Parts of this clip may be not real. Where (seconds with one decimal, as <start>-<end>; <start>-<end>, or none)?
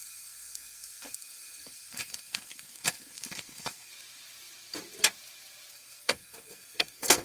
0.0-3.9; 5.7-7.2